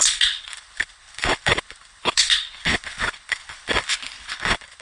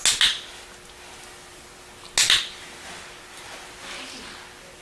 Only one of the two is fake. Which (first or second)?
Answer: first